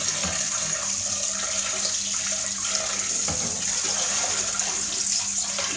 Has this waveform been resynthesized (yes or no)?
no